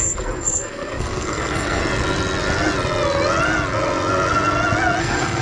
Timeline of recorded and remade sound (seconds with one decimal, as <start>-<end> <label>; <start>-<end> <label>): 0.0-1.8 remade; 1.8-5.0 recorded; 5.0-5.4 remade

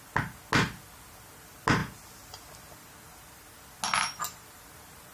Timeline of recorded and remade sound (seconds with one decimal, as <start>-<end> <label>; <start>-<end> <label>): 0.0-5.1 recorded